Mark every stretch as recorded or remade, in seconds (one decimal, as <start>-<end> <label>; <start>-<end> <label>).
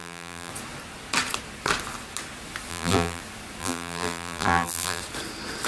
0.0-0.5 remade; 0.5-2.7 recorded; 2.7-3.2 remade; 3.2-3.6 recorded; 3.6-5.0 remade; 5.0-5.7 recorded